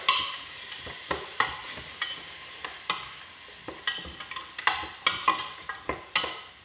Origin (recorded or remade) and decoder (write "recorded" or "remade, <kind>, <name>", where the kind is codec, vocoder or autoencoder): recorded